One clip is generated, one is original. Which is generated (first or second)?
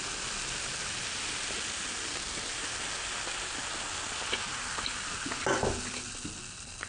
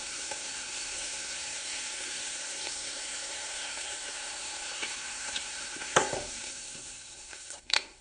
second